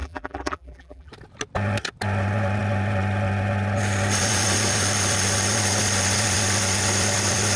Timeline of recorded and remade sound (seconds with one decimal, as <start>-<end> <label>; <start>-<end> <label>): 0.0-1.1 remade; 1.1-7.6 recorded